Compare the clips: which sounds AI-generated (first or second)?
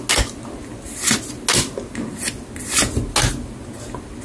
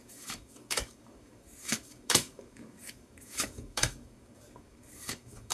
second